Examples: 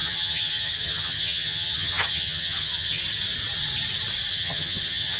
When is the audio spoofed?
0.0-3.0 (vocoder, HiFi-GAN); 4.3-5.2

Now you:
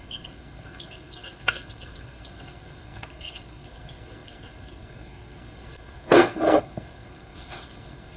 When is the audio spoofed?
0.0-8.2 (codec, SNAC)

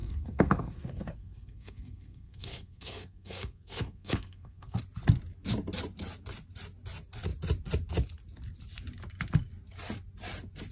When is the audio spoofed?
0.0-4.8 (codec, SNAC)